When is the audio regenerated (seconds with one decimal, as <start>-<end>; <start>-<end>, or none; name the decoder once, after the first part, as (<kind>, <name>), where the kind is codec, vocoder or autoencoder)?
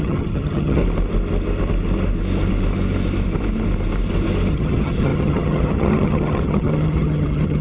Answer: 0.0-0.8 (vocoder, HiFi-GAN); 4.5-7.6